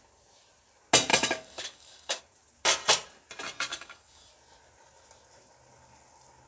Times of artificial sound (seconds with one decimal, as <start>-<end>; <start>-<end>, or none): 1.1-2.2; 3.7-4.3